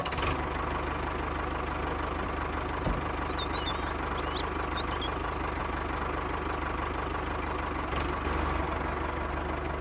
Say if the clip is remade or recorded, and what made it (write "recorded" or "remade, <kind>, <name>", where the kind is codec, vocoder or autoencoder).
recorded